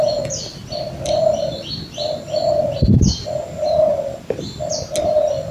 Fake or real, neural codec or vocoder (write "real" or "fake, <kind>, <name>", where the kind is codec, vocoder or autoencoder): real